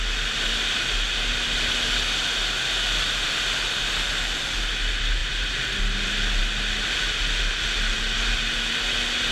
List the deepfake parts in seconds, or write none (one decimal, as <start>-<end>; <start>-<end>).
none